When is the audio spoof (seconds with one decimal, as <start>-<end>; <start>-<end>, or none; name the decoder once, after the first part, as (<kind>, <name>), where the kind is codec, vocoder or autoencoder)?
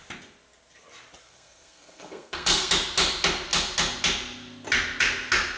1.2-2.7 (codec, SNAC)